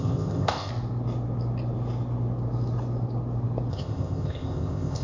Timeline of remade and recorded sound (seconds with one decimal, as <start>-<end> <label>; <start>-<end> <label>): 0.0-0.7 remade; 0.7-3.7 recorded; 3.7-5.0 remade